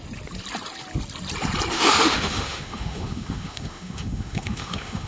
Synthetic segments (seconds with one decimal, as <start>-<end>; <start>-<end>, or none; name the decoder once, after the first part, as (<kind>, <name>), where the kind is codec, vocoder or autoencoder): 1.7-5.1 (autoencoder, DAC-VAE)